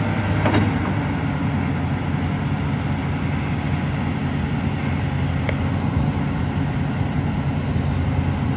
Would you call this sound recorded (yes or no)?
yes